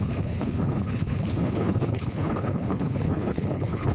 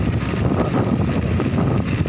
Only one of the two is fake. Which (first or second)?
first